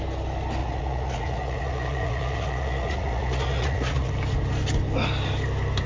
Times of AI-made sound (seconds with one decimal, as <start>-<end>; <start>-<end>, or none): 0.6-4.1